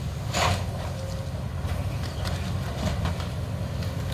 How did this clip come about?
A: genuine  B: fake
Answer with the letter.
A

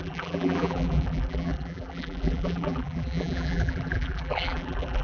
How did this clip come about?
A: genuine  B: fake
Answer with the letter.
B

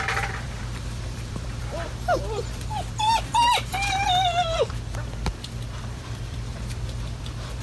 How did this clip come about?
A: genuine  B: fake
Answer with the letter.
B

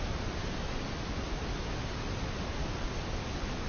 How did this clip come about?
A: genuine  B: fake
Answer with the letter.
B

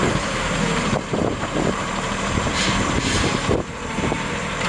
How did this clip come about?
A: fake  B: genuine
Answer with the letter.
A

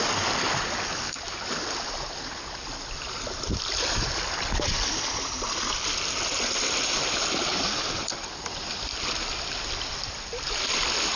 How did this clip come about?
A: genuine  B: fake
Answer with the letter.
A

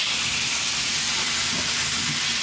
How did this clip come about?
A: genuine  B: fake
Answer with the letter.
B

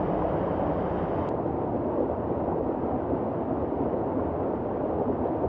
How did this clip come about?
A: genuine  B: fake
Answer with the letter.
A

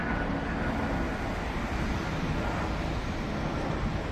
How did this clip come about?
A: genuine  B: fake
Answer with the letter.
A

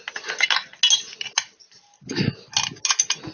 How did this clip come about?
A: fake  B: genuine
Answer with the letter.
B